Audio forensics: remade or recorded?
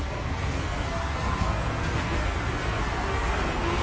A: remade